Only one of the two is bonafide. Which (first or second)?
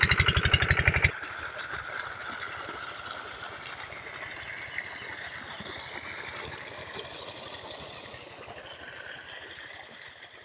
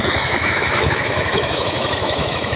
first